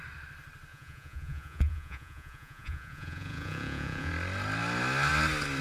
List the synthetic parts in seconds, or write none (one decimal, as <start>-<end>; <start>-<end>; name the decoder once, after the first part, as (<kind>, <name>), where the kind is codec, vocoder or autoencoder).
0.7-4.1 (vocoder, Vocos)